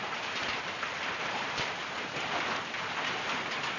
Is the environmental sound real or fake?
real